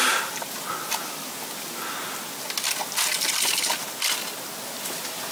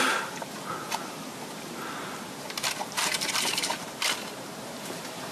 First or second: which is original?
first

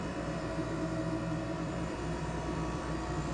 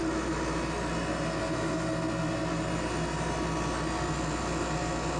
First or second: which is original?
second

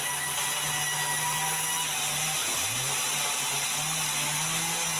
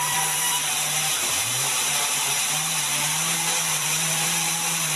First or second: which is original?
first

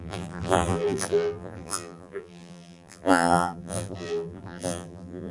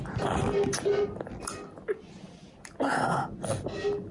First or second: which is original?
second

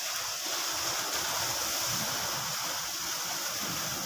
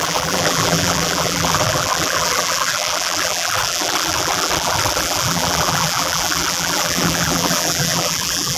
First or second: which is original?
first